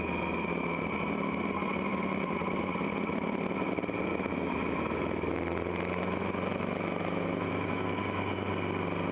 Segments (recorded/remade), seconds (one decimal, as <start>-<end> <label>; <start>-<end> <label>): 0.0-4.3 recorded; 4.3-8.5 remade; 8.5-9.1 recorded